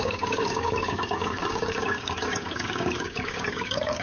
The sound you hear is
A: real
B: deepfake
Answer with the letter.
B